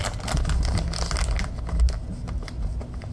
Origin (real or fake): real